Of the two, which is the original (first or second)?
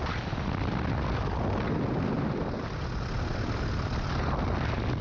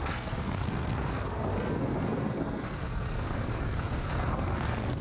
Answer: first